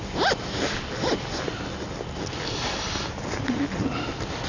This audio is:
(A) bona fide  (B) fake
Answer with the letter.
A